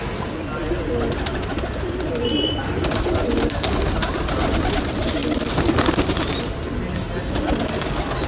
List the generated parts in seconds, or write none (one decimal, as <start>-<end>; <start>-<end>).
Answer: none